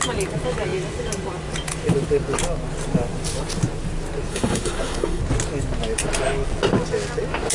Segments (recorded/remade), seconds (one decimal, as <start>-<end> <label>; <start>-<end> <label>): 0.0-4.3 recorded; 4.3-5.2 remade; 5.2-7.5 recorded